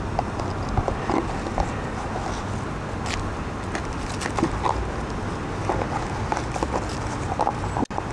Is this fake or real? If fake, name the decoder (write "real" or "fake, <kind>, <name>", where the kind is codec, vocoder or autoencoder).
real